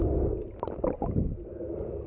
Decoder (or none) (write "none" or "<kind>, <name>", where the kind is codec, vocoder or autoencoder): none